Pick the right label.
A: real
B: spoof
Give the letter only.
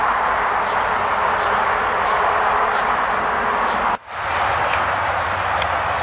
A